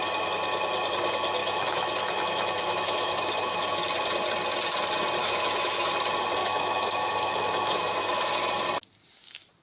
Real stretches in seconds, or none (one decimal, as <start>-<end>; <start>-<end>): 0.0-1.4; 3.9-5.2; 5.9-6.4; 8.3-9.6